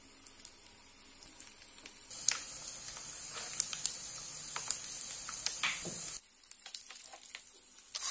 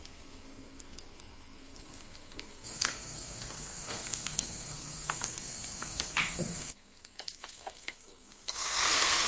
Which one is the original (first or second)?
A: first